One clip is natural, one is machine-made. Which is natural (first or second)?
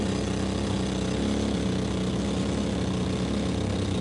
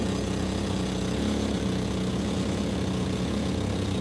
first